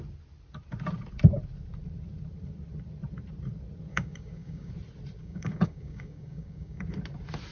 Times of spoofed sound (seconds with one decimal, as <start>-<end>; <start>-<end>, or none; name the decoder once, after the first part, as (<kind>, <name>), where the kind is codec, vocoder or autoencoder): 3.9-4.7 (codec, DAC); 5.2-6.8